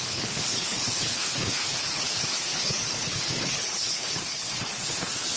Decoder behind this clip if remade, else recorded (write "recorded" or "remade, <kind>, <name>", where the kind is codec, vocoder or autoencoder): remade, codec, HILCodec